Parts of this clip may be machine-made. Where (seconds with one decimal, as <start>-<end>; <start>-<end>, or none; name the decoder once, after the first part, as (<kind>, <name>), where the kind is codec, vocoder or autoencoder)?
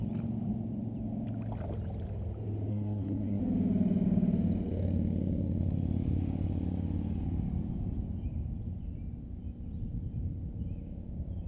2.7-3.4 (codec, SNAC)